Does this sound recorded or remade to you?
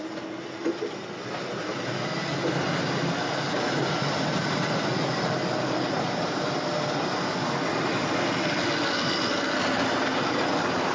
recorded